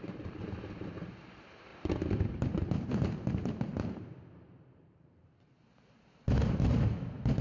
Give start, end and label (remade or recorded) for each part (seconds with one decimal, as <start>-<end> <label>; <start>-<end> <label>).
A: 0.0-3.7 remade; 3.7-4.8 recorded; 4.8-7.4 remade